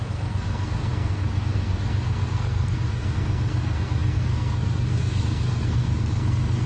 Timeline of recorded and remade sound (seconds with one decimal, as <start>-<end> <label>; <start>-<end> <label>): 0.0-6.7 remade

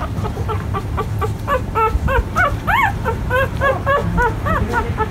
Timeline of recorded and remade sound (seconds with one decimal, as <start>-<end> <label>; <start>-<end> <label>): 0.0-3.1 recorded; 3.1-4.0 remade; 4.0-4.6 recorded; 4.6-5.1 remade

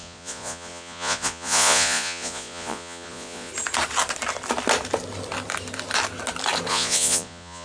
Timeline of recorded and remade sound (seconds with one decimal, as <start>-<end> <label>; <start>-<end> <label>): 0.0-3.5 remade; 3.5-6.7 recorded; 6.7-7.6 remade

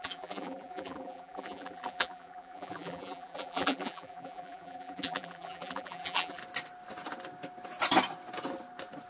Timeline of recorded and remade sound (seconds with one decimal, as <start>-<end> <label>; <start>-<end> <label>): 0.0-6.4 remade; 6.4-9.1 recorded

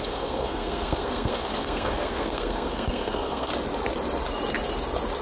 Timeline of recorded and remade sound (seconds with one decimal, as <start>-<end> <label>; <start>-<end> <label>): 0.0-3.5 remade; 3.5-5.2 recorded

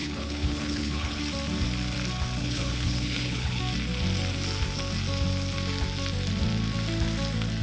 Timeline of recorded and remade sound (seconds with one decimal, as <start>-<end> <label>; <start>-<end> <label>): 0.0-1.2 remade; 1.2-2.4 recorded; 2.4-3.6 remade; 3.6-7.6 recorded